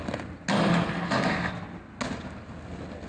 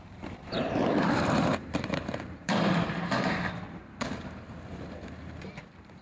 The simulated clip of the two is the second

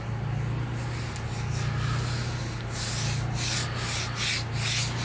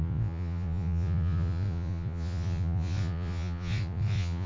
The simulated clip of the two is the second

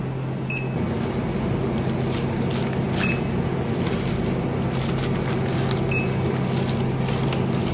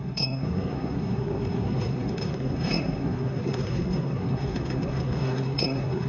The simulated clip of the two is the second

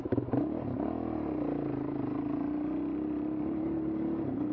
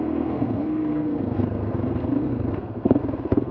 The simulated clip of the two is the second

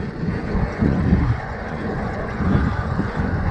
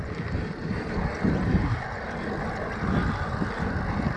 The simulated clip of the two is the first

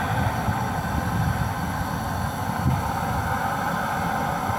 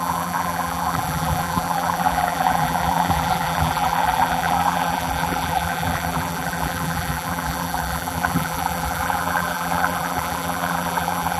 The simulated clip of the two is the second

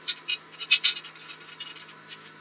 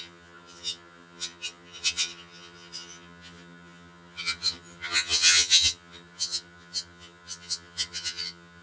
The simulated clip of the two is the second